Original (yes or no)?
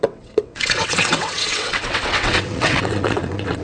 no